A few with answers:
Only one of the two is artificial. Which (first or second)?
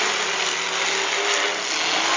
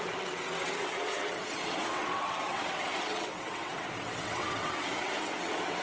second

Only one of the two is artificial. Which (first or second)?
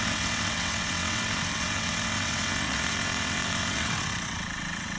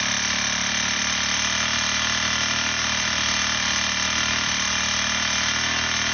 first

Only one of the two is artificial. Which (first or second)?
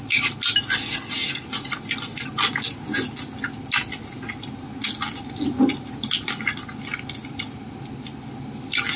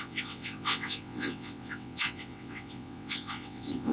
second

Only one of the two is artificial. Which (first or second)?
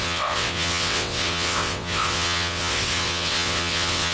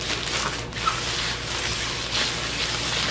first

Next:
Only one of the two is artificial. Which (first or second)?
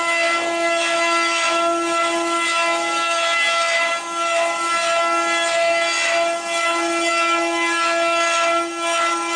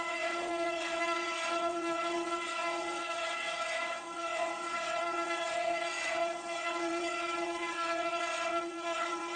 second